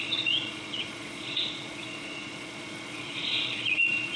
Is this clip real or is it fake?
fake